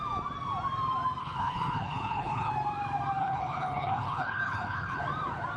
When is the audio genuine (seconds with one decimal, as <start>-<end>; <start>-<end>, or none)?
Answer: 0.0-1.2; 2.5-3.2; 5.0-5.6